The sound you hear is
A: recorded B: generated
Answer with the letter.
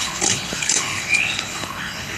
B